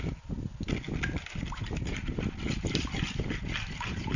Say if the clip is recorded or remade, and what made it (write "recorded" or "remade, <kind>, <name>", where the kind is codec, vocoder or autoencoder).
recorded